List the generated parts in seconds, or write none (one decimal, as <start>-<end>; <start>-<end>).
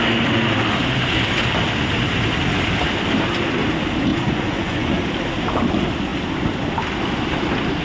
4.1-5.1